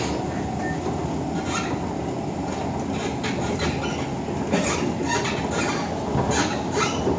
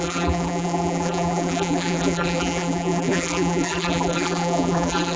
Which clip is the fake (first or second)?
second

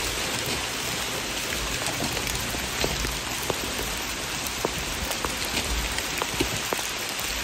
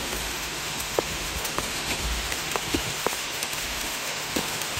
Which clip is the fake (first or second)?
second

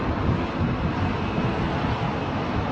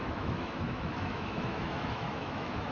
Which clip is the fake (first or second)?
second